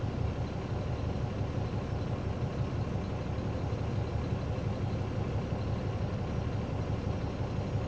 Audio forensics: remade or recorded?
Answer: recorded